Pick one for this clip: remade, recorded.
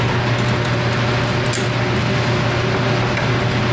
recorded